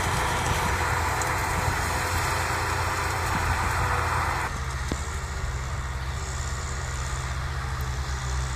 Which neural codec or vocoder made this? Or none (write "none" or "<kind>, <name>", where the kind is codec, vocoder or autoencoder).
none